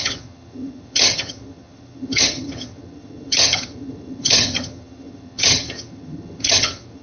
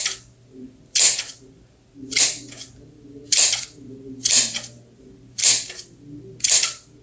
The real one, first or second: second